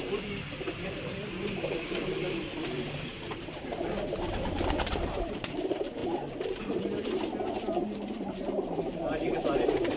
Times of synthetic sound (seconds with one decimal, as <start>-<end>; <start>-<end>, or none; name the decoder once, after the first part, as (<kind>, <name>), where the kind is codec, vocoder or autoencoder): 0.0-10.0 (vocoder, BigVGAN v2)